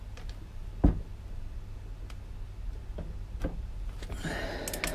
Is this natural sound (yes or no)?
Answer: yes